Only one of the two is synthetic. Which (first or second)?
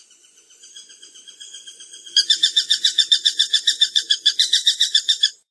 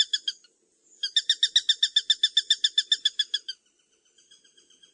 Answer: first